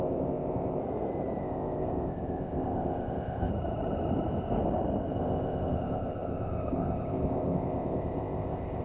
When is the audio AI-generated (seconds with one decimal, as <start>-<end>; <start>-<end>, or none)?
0.0-0.8; 1.4-3.5; 5.1-8.8